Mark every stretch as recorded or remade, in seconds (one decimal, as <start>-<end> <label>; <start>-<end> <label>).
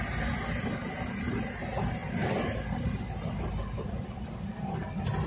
0.0-5.3 recorded